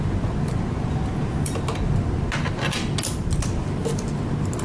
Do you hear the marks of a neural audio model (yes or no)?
no